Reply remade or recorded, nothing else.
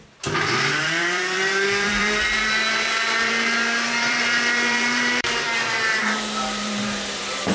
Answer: remade